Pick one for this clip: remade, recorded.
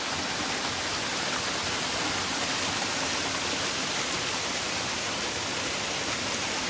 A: recorded